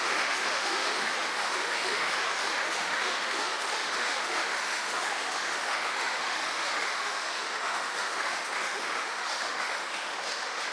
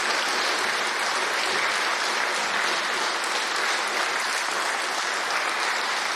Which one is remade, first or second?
first